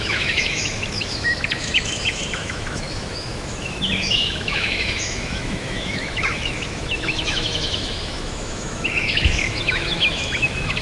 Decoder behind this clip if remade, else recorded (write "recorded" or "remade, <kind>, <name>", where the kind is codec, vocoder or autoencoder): remade, autoencoder, DAC-VAE